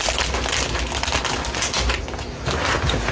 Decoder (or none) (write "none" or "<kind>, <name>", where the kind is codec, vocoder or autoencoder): none